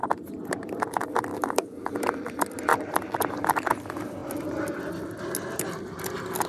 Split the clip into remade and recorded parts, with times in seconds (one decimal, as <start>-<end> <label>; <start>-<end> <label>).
0.0-1.3 recorded; 1.3-1.9 remade; 1.9-6.5 recorded